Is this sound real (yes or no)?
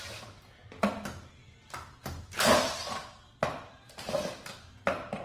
yes